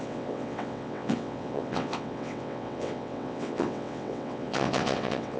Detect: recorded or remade remade